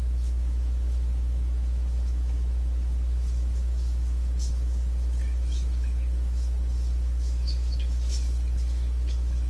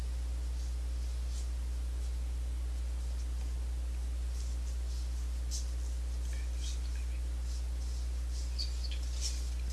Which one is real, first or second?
second